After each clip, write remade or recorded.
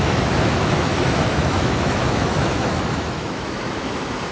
remade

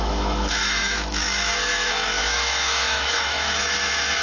remade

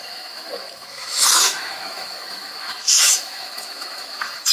remade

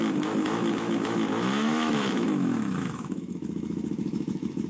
remade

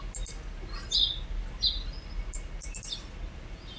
recorded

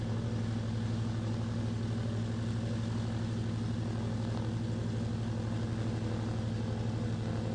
recorded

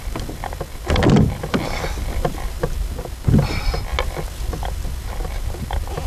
recorded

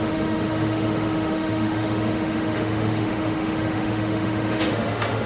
remade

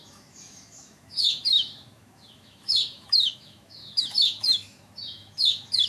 remade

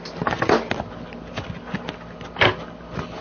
recorded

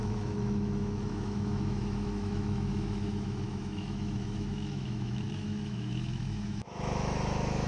remade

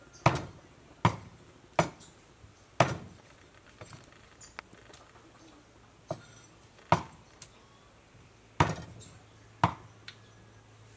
recorded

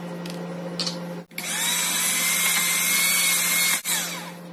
recorded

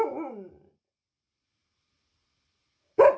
recorded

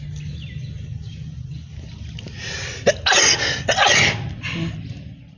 recorded